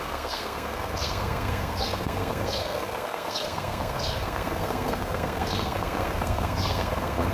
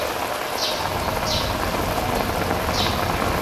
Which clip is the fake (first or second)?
first